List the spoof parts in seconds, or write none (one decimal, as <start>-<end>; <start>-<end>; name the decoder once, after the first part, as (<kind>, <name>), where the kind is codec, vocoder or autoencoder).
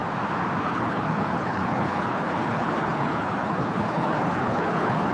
0.6-5.1 (codec, HILCodec)